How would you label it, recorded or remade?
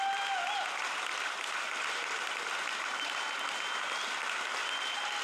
recorded